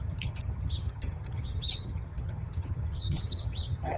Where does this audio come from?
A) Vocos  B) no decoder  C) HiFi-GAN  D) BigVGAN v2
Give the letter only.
C